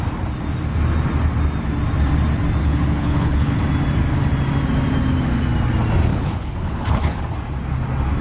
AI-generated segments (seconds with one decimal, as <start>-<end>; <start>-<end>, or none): 2.6-3.6; 6.1-7.2